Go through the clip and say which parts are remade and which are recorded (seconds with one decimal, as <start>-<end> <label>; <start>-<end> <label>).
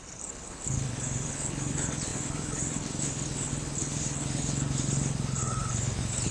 0.0-6.3 remade